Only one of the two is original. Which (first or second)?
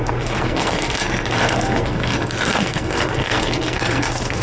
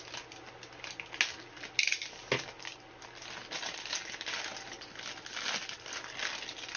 second